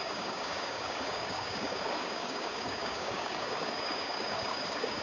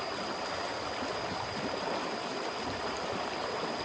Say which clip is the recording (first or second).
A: second